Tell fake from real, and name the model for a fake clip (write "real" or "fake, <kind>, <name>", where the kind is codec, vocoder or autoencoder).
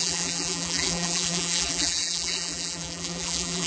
fake, vocoder, BigVGAN v2